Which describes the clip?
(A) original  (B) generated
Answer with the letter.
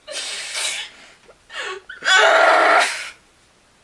A